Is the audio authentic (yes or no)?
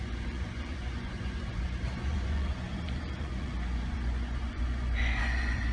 no